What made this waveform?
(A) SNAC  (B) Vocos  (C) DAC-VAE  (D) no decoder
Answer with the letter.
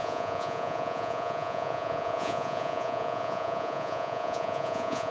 B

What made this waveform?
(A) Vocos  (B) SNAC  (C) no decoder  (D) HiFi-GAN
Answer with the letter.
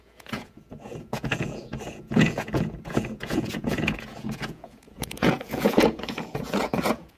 A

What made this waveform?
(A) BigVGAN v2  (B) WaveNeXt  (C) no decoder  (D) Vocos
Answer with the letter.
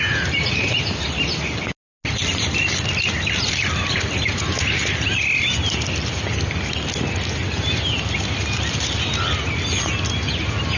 C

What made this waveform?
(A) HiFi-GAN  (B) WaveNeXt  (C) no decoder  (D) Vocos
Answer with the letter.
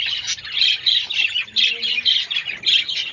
C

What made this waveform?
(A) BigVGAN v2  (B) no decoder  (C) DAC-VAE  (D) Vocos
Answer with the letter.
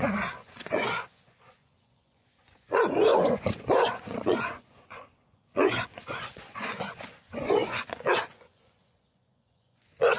D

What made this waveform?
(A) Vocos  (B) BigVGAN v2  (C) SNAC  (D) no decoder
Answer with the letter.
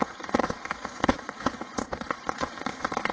A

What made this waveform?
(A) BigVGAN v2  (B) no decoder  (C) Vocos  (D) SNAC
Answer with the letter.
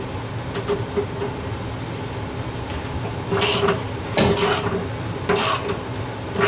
B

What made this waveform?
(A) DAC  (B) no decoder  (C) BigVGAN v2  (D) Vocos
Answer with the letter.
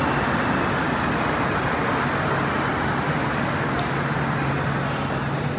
B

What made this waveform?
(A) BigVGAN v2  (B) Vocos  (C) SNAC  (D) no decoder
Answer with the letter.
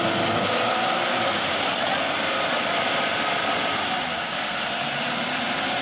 D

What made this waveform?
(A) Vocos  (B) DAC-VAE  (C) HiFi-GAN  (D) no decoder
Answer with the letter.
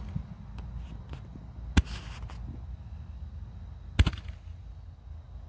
D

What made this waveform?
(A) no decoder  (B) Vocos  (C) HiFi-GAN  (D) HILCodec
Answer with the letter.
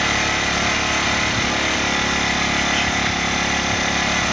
A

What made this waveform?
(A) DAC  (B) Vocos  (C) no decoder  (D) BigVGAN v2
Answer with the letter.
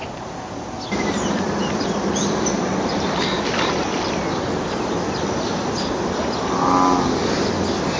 C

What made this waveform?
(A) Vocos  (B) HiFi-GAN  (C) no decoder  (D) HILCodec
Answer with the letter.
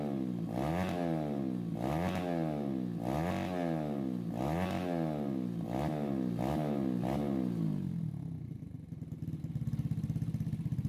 C